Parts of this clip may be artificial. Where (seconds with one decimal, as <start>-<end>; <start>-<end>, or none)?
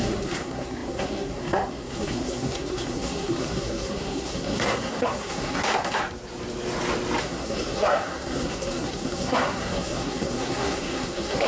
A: 0.0-6.0; 7.2-11.5